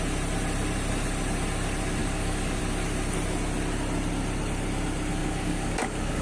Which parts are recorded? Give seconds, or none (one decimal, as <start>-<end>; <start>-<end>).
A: 0.0-2.0; 2.6-5.2